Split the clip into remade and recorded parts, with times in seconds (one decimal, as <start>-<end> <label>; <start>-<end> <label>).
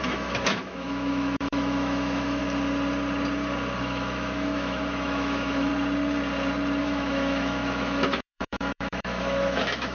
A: 0.0-2.4 remade; 2.4-3.8 recorded; 3.8-5.7 remade; 5.7-6.8 recorded; 6.8-9.9 remade